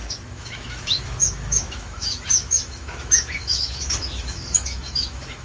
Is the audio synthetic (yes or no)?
yes